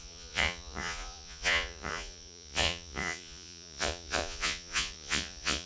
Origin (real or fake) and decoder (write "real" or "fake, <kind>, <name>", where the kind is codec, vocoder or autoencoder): fake, vocoder, Vocos